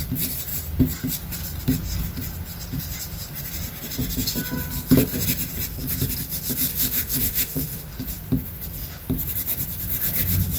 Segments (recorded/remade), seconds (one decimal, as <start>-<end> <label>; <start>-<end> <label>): 0.0-6.7 recorded; 6.7-7.9 remade; 7.9-10.6 recorded